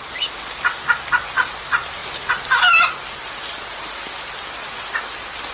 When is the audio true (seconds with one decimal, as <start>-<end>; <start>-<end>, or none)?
0.0-5.5